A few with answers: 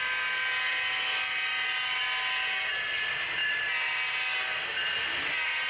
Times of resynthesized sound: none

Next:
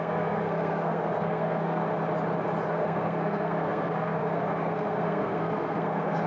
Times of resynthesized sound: 0.0-1.8 (codec, SNAC); 2.7-6.3

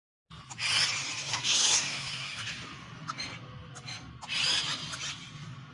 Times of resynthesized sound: 1.3-2.5 (codec, SNAC)

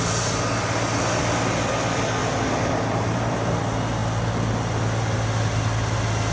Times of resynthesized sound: 2.2-3.6 (vocoder, BigVGAN v2)